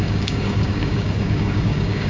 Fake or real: fake